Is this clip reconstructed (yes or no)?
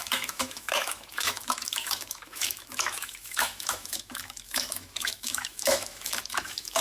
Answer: yes